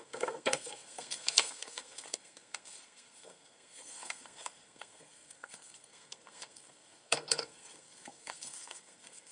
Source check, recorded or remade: remade